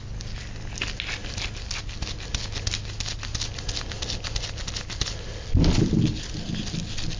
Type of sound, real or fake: real